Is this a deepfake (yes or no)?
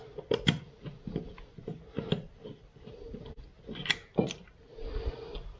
no